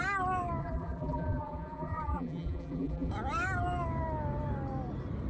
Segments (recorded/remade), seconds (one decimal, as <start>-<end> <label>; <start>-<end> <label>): 0.0-0.6 recorded; 0.6-3.1 remade; 3.1-5.3 recorded